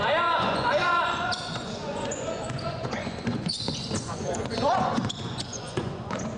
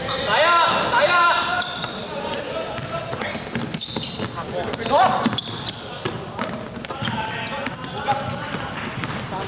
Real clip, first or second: second